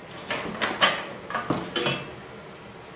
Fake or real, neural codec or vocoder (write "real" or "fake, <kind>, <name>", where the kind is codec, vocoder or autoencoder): real